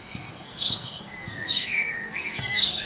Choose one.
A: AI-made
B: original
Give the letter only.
A